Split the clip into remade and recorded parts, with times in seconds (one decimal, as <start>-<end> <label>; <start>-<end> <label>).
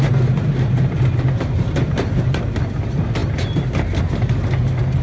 0.0-3.2 recorded; 3.2-4.0 remade; 4.0-5.0 recorded